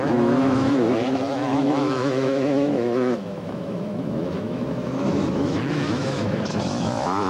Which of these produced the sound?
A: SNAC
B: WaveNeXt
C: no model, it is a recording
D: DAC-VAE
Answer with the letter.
D